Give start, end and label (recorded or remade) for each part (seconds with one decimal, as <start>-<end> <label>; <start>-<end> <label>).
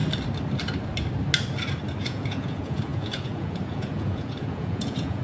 0.0-2.0 recorded; 2.0-5.2 remade